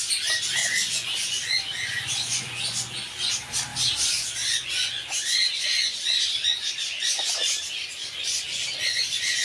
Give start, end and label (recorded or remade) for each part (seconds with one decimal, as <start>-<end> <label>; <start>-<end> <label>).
0.0-0.6 recorded; 0.6-3.3 remade; 3.3-3.7 recorded; 3.7-6.0 remade; 6.0-6.5 recorded; 6.5-7.3 remade; 7.3-8.0 recorded; 8.0-9.4 remade